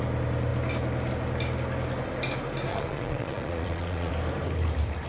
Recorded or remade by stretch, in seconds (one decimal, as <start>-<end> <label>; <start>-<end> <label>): 0.0-2.7 recorded; 2.7-4.1 remade; 4.1-5.1 recorded